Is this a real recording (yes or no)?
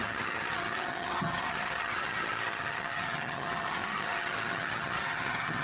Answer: no